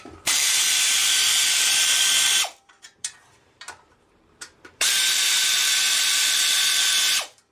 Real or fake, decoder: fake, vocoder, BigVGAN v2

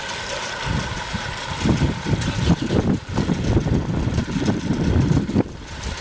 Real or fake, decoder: real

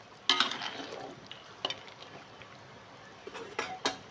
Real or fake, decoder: real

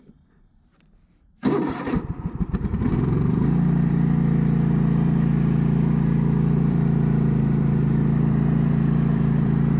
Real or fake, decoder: fake, vocoder, BigVGAN v2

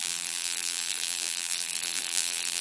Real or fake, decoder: fake, vocoder, BigVGAN v2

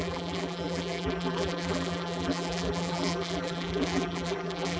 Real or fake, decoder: fake, vocoder, BigVGAN v2